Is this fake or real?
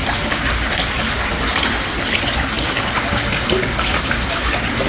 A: real